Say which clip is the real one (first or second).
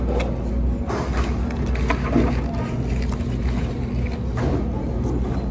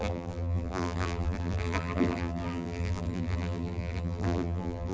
first